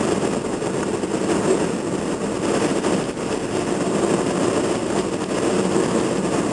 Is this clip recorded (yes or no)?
yes